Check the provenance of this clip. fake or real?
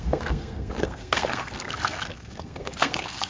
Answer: fake